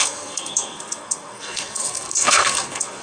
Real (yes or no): no